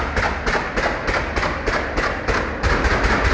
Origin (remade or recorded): recorded